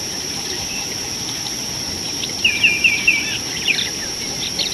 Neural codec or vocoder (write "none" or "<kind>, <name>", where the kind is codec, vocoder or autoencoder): vocoder, BigVGAN v2